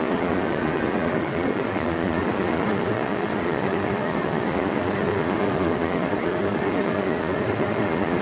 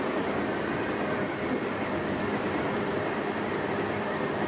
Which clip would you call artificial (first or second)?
first